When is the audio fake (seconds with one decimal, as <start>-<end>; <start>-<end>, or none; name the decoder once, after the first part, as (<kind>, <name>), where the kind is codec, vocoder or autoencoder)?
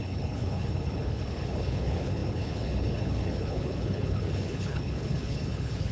0.0-5.9 (codec, HILCodec)